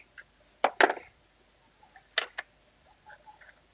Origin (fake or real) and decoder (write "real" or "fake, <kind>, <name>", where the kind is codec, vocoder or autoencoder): real